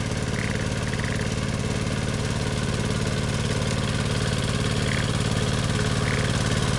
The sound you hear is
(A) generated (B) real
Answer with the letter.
B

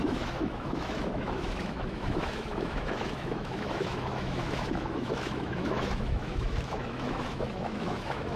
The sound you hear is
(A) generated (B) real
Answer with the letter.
A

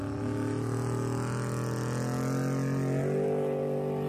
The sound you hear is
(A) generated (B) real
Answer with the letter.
B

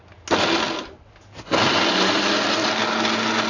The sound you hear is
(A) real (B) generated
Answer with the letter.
A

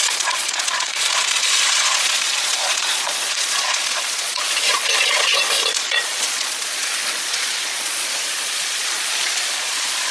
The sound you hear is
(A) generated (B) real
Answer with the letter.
A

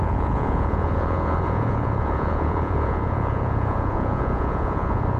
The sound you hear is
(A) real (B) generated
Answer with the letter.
B